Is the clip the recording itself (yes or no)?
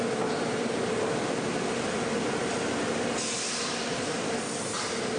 yes